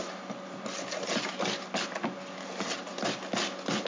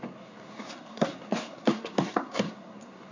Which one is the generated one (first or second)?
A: second